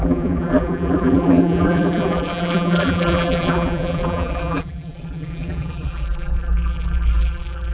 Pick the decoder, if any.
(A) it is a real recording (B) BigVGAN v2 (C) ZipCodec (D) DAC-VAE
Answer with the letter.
B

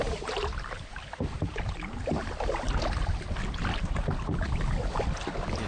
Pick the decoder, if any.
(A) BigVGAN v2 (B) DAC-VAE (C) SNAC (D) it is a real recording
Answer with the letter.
D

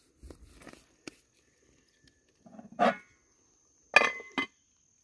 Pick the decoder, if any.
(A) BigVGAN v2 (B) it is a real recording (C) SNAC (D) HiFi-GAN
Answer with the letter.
B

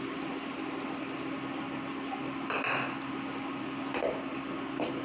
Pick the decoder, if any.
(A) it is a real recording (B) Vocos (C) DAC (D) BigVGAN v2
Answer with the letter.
A